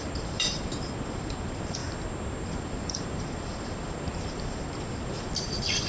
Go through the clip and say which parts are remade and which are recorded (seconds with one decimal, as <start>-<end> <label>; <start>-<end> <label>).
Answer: 0.0-1.8 remade; 1.8-2.5 recorded; 2.5-5.9 remade

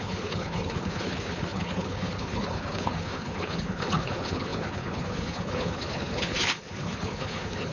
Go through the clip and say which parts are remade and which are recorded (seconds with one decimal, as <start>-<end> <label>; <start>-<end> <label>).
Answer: 0.0-7.7 remade